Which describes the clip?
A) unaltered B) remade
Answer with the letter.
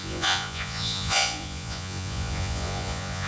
B